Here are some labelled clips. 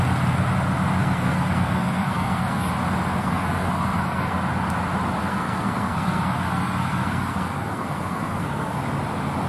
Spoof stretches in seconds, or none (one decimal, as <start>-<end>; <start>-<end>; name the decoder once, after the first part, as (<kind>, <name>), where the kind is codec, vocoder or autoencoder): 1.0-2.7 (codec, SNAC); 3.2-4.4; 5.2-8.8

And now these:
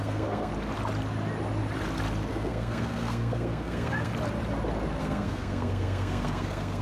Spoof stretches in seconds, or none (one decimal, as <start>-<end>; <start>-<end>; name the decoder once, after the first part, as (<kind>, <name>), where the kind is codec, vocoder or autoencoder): 0.0-0.5 (codec, SNAC); 2.3-4.1; 5.0-6.8

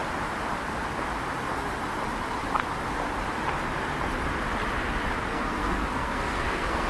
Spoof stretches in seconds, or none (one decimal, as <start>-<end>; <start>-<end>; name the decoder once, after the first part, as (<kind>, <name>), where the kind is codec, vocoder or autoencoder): 5.3-6.9 (codec, SNAC)

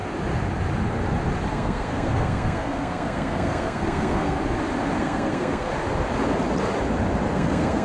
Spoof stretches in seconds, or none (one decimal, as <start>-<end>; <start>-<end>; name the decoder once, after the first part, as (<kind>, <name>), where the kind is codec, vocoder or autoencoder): 1.5-4.4 (codec, SNAC); 5.0-5.7; 7.3-7.8

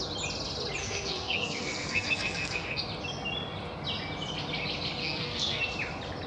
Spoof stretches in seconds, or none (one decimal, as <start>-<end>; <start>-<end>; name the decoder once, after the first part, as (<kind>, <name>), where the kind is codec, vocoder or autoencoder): 0.8-2.8 (codec, SNAC); 5.0-5.6

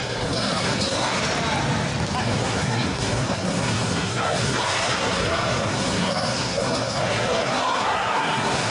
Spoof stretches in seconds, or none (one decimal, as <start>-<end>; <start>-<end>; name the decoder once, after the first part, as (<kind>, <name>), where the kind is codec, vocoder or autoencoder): 0.0-1.2 (codec, SNAC); 2.2-8.7

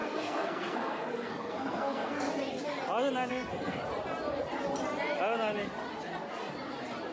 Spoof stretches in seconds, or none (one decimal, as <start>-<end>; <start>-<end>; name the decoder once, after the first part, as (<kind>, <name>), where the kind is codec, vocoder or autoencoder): 0.0-2.3 (codec, SNAC); 3.3-3.8